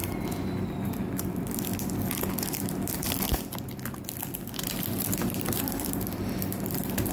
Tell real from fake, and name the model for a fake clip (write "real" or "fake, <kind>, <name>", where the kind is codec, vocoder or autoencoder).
fake, vocoder, BigVGAN v2